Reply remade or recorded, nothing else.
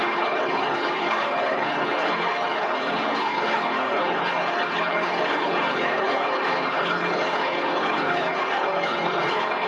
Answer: remade